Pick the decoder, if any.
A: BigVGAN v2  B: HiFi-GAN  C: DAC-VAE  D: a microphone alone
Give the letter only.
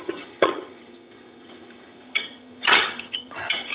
B